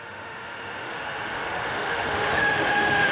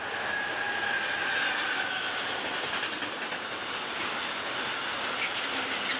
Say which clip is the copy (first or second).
first